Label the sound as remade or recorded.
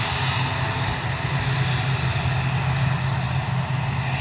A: recorded